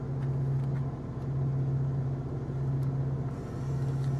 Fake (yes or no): no